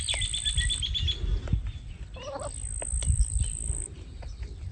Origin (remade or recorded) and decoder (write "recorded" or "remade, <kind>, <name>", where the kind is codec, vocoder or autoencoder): recorded